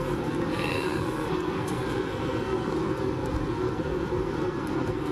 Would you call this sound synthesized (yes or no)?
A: yes